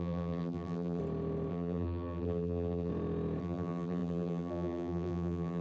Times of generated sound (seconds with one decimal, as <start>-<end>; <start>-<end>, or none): 0.0-1.0; 1.5-2.9; 3.4-5.6